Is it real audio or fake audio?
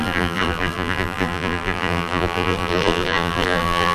fake